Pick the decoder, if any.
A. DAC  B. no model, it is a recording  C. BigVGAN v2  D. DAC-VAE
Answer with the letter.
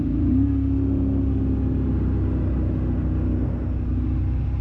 B